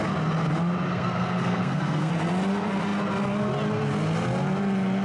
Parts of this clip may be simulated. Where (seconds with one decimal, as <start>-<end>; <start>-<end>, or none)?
0.9-2.1